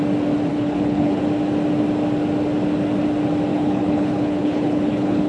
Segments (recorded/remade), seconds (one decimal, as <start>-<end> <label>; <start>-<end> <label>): 0.0-0.5 recorded; 0.5-1.2 remade; 1.2-3.5 recorded; 3.5-5.3 remade

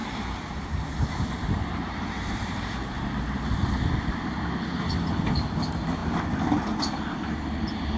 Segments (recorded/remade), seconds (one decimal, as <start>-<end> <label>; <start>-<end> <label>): 0.0-3.4 remade; 3.4-8.0 recorded

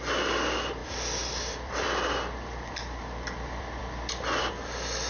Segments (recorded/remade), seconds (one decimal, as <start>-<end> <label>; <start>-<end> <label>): 0.0-0.8 recorded; 0.8-3.0 remade; 3.0-5.1 recorded

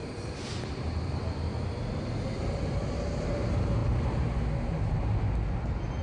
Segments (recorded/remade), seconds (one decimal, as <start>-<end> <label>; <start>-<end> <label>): 0.0-6.0 recorded